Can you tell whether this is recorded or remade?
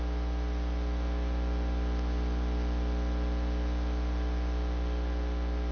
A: recorded